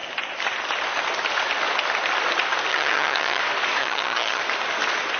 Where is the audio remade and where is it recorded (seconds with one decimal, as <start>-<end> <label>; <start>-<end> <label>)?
0.0-2.7 recorded; 2.7-3.4 remade; 3.4-3.8 recorded; 3.8-4.4 remade; 4.4-5.2 recorded